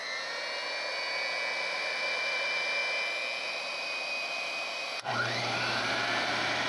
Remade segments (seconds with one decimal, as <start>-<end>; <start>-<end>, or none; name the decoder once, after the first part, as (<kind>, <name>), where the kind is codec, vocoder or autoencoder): 1.6-2.8 (vocoder, BigVGAN v2); 3.4-6.7